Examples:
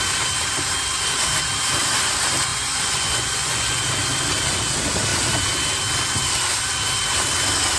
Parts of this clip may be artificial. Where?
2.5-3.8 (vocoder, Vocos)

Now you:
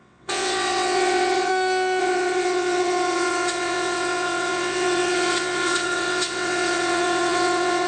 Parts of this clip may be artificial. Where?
0.0-1.5 (vocoder, WaveNeXt); 2.0-7.9

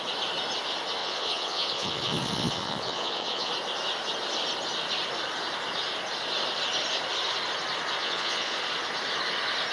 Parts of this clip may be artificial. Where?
1.0-3.5 (vocoder, Vocos); 8.0-8.6

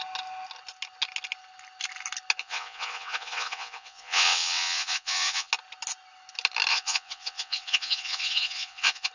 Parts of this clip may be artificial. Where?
2.4-5.5 (vocoder, WaveNeXt); 6.7-9.1

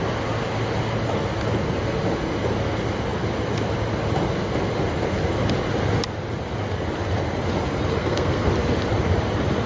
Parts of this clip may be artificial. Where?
8.0-8.5 (codec, SNAC)

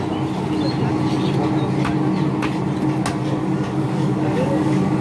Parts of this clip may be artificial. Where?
3.4-5.0 (codec, DAC)

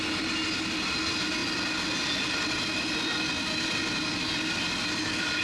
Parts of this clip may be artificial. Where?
none